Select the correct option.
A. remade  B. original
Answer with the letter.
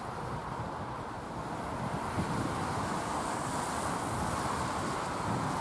B